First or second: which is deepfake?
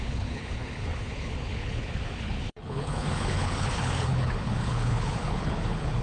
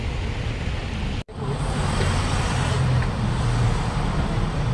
first